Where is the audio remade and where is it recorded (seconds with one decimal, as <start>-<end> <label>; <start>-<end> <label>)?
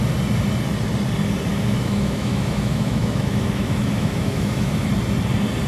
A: 0.0-1.5 recorded; 1.5-4.9 remade; 4.9-5.7 recorded